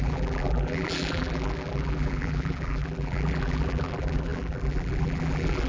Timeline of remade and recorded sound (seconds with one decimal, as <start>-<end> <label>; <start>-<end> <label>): 0.0-5.7 remade